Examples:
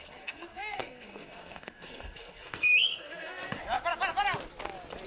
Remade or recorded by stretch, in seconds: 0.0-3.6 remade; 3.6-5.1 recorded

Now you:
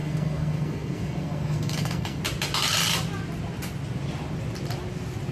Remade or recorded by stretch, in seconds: 0.0-2.2 remade; 2.2-5.3 recorded

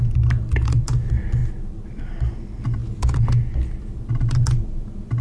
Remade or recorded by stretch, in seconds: 0.0-5.2 recorded

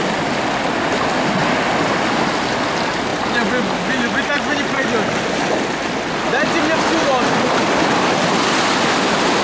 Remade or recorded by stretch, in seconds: 0.0-9.4 recorded

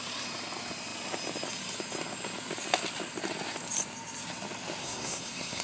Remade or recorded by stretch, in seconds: 0.0-4.8 recorded; 4.8-5.6 remade

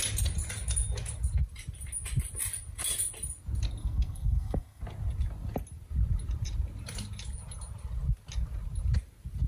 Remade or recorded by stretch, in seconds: 0.0-3.8 recorded; 3.8-4.8 remade; 4.8-9.5 recorded